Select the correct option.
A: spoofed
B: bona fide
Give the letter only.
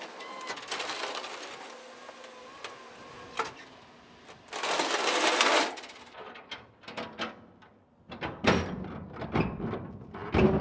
B